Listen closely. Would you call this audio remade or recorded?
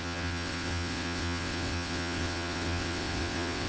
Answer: remade